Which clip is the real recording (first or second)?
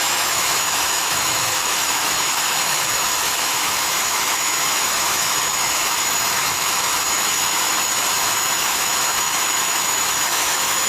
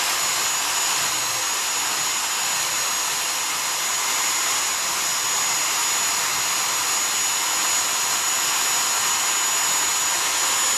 second